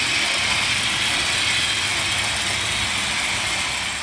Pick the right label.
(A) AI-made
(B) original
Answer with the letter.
B